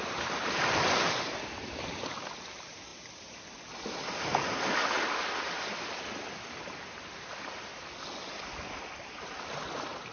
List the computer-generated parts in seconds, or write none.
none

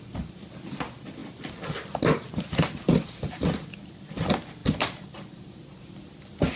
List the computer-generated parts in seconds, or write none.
4.6-5.8

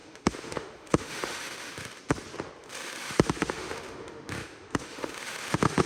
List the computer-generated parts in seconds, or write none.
0.0-2.0; 2.6-5.9

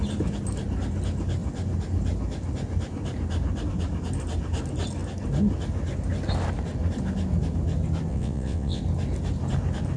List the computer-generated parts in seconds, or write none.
8.1-8.8

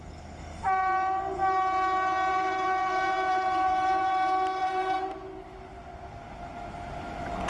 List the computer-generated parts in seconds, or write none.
2.3-4.1; 4.6-5.3